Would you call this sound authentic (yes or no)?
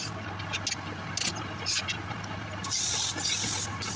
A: yes